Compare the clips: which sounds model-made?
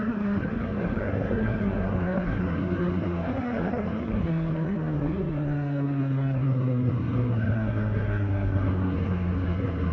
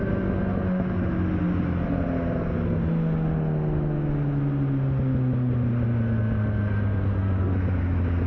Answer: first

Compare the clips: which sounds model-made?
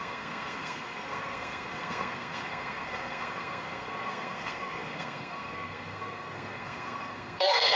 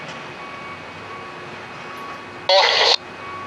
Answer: first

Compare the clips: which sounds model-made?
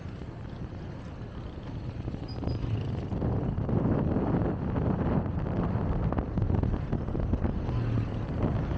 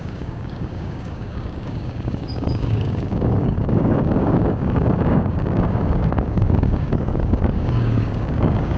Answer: second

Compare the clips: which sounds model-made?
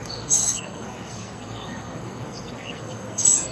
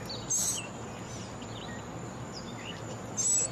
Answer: first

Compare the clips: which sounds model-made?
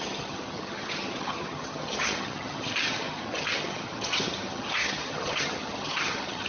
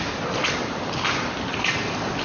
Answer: first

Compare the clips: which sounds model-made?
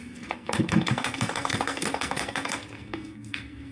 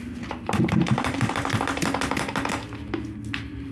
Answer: first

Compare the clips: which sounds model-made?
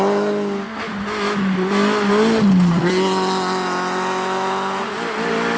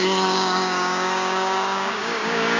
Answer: second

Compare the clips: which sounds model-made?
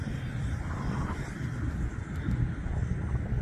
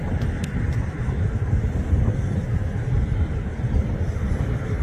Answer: first